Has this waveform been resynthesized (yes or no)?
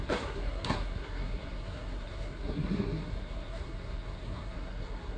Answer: yes